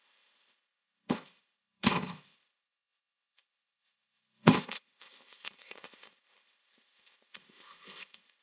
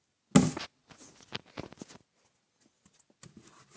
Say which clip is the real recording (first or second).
second